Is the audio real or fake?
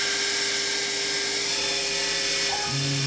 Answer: real